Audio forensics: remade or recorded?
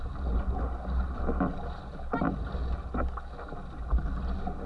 recorded